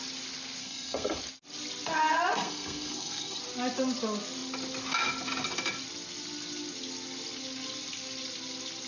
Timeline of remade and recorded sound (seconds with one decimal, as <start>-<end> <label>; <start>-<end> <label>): 0.0-0.6 recorded; 0.6-1.2 remade; 1.2-2.3 recorded; 2.3-3.4 remade; 3.4-8.9 recorded